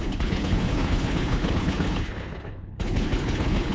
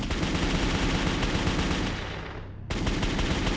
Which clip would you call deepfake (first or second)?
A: first